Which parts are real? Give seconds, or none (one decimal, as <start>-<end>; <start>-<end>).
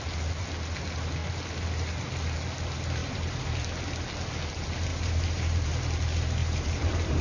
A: 0.0-3.0; 3.6-4.9; 5.7-6.4